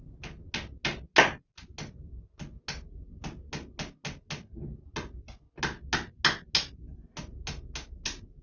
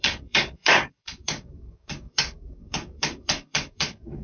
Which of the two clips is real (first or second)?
first